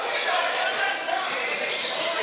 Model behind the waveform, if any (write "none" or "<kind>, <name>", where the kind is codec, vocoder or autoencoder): vocoder, BigVGAN v2